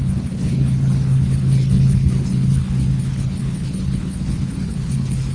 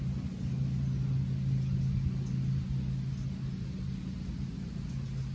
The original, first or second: second